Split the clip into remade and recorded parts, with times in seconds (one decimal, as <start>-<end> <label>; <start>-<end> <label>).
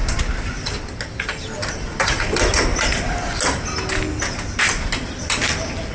0.0-5.9 recorded